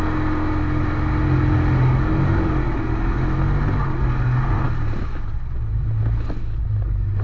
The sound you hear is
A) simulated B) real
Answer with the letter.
B